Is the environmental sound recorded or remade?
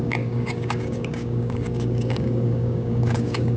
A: remade